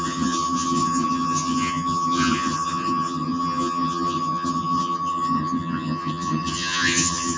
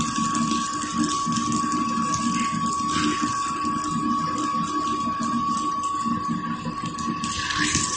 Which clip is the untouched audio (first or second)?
second